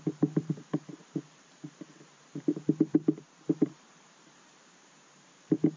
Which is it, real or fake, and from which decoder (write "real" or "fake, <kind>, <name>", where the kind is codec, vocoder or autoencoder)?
fake, vocoder, BigVGAN v2